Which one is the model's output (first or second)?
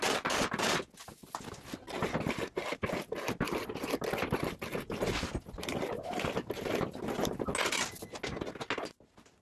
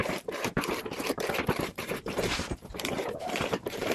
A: second